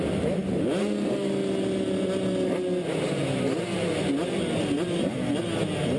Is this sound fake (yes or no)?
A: no